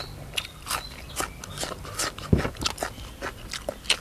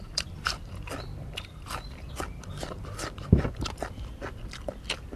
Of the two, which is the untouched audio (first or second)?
first